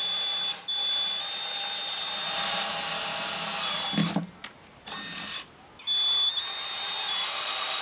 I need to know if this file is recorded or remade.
recorded